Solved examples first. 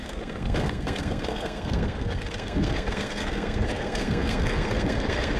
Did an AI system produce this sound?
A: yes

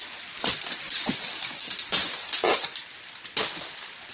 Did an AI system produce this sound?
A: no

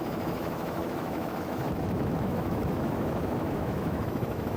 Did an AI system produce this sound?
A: yes